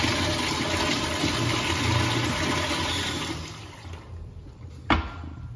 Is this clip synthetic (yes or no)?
no